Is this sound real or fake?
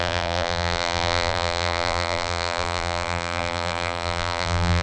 fake